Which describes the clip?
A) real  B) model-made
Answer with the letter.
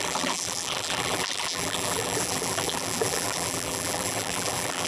B